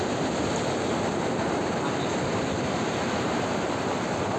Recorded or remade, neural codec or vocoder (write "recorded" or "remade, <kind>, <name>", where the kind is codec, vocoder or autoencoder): remade, vocoder, BigVGAN v2